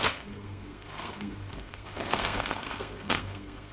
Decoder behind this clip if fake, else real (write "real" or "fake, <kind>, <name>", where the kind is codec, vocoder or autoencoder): fake, codec, SNAC